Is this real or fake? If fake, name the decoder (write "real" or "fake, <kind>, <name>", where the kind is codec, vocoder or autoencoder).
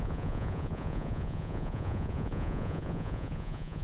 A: fake, vocoder, Vocos